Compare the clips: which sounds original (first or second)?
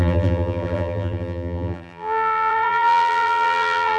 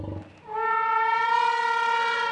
second